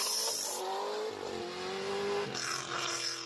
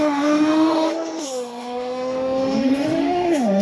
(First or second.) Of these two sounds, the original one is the first